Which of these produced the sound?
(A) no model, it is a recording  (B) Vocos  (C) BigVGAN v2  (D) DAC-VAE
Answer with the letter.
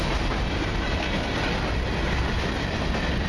A